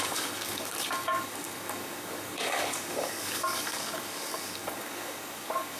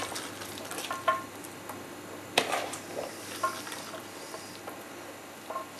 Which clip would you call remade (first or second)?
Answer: first